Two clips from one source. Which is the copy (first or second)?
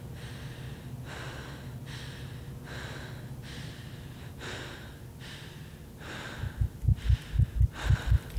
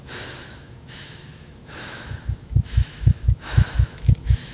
second